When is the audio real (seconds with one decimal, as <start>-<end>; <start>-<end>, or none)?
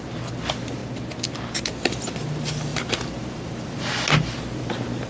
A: 0.0-5.1